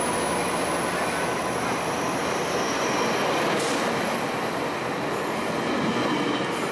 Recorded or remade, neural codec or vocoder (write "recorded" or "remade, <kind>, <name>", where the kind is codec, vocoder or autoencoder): recorded